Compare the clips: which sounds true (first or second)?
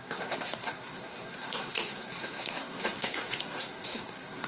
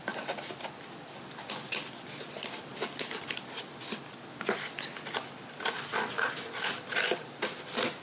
second